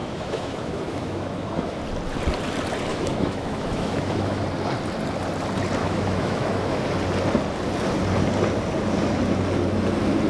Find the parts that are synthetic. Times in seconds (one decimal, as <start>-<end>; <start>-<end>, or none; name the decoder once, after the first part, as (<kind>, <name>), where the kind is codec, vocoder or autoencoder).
0.0-1.8 (autoencoder, DAC-VAE); 2.9-4.4; 5.8-6.8